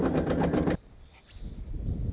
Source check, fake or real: real